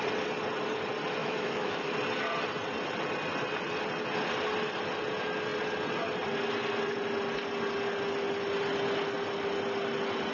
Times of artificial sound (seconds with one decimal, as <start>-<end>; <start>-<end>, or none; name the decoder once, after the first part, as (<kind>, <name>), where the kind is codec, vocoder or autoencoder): 1.2-1.9 (autoencoder, DAC-VAE)